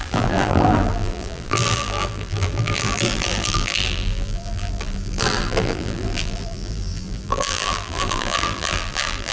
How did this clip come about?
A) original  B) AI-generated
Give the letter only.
B